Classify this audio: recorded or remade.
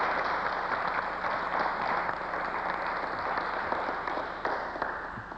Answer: recorded